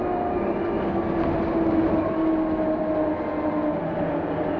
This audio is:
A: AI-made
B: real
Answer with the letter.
B